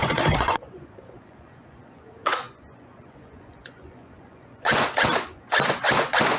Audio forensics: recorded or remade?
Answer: remade